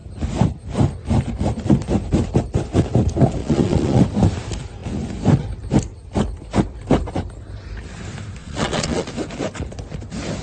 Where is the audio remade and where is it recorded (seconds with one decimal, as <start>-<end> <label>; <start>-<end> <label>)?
0.0-3.4 recorded; 3.4-4.0 remade; 4.0-8.4 recorded; 8.4-9.1 remade; 9.1-10.4 recorded